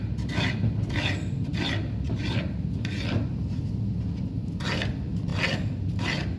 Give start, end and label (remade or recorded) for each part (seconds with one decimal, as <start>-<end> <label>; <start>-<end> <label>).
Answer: 0.0-6.4 recorded